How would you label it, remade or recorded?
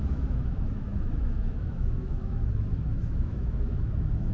remade